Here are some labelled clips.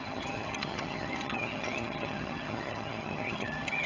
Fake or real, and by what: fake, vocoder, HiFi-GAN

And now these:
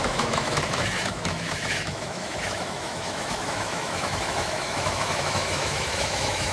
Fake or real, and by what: fake, autoencoder, DAC-VAE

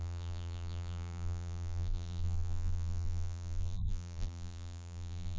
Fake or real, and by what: fake, vocoder, BigVGAN v2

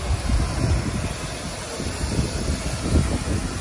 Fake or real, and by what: real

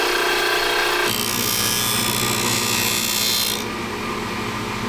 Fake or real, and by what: real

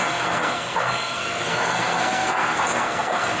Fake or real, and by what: fake, codec, SNAC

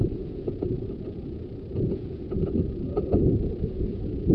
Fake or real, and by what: fake, vocoder, Vocos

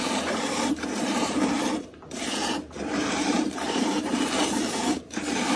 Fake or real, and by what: fake, vocoder, BigVGAN v2